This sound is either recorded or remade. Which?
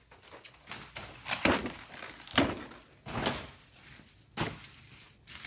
recorded